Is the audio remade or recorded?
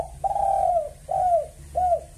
recorded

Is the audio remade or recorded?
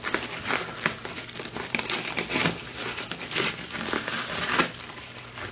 remade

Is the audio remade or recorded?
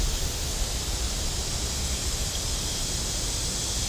recorded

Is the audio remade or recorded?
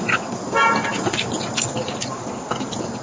recorded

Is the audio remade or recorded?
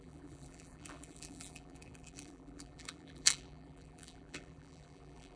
remade